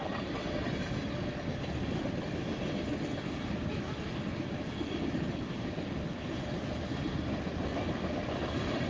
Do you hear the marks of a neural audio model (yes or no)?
no